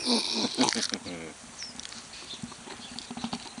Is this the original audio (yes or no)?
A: yes